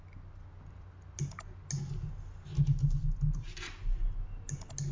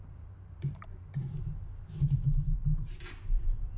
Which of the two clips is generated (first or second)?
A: second